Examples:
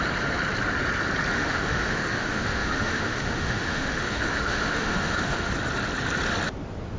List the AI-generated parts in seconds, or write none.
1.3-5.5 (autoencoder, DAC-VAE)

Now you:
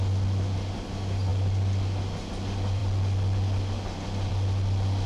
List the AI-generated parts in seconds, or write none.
none

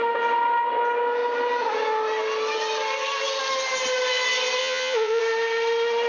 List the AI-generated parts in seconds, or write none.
4.6-5.2 (vocoder, Vocos)

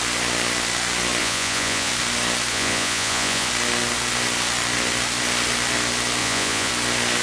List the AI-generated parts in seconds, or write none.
1.2-1.9 (vocoder, Vocos); 2.5-3.5; 6.2-6.7